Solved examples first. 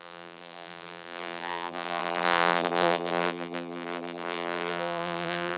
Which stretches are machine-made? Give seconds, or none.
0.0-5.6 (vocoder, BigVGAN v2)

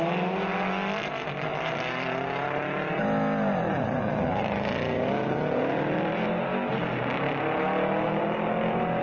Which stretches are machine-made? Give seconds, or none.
1.5-6.7 (vocoder, BigVGAN v2)

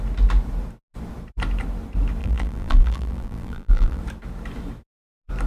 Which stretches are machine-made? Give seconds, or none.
2.2-4.0 (vocoder, BigVGAN v2)